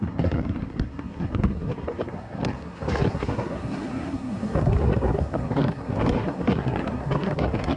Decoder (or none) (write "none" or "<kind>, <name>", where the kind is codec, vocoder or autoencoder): codec, SNAC